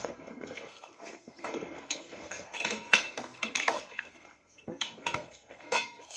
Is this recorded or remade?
remade